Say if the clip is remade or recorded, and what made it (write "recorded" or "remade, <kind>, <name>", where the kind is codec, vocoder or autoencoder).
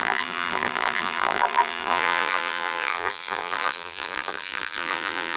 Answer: remade, vocoder, BigVGAN v2